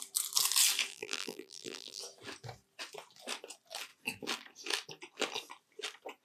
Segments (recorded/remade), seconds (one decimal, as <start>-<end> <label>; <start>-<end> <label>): 0.0-0.9 recorded; 0.9-2.0 remade; 2.0-6.2 recorded